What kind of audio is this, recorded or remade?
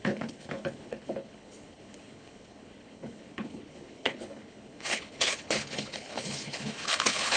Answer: remade